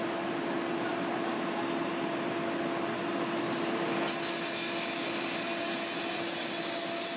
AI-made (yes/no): no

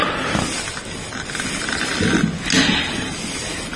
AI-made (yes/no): no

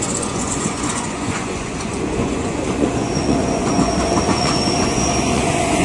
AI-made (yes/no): yes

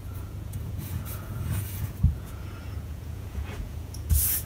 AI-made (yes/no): yes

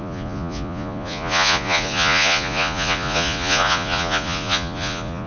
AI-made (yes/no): yes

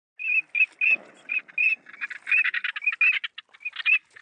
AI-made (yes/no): no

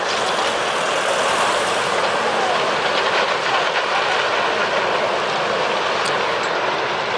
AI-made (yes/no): no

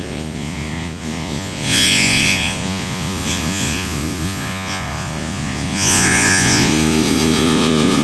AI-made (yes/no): yes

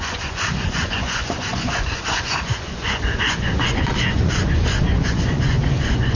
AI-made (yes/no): yes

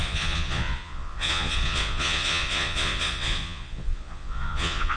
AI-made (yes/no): yes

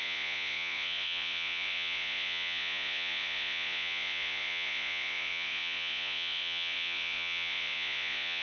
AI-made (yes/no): yes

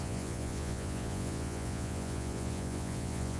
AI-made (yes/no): yes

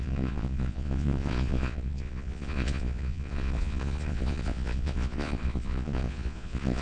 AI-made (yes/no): yes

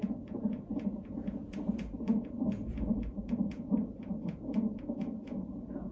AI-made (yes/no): yes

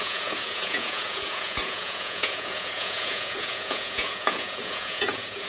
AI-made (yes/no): yes